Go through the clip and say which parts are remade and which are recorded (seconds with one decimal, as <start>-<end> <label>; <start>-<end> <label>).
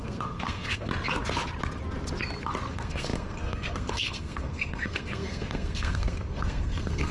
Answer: 0.0-0.9 remade; 0.9-2.7 recorded; 2.7-7.1 remade